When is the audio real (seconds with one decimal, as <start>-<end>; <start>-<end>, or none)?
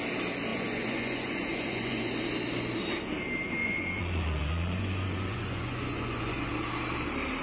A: 0.0-0.5; 2.1-3.6; 6.5-7.4